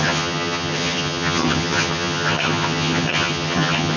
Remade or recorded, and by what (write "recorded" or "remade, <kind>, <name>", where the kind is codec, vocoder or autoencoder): remade, vocoder, HiFi-GAN